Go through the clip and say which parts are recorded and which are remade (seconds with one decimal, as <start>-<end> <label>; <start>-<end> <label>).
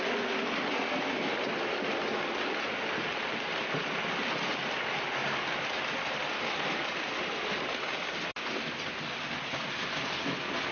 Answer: 0.0-10.7 recorded